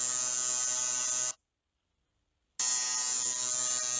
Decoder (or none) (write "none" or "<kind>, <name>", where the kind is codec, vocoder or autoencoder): none